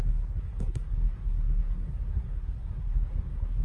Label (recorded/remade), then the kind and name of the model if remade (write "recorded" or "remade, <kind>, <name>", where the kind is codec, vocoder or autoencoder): remade, codec, SNAC